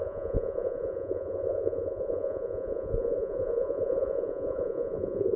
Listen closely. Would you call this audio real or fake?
fake